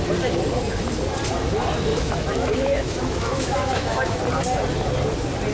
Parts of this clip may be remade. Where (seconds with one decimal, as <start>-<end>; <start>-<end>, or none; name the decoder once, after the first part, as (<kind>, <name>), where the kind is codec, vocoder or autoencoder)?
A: 1.9-4.2 (autoencoder, DAC-VAE)